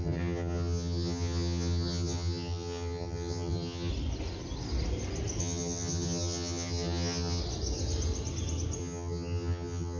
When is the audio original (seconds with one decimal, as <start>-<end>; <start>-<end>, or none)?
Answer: 3.9-5.4; 7.4-8.8